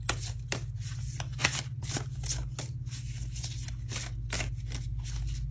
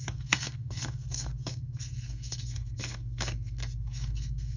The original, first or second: first